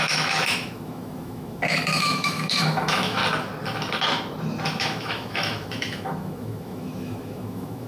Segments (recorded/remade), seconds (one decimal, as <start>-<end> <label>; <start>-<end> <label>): 0.0-3.2 remade; 3.2-4.8 recorded; 4.8-7.9 remade